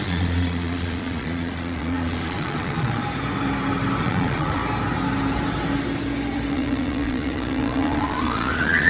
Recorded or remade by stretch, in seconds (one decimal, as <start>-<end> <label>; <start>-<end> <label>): 0.0-3.0 remade; 3.0-4.0 recorded; 4.0-4.6 remade; 4.6-6.5 recorded; 6.5-8.9 remade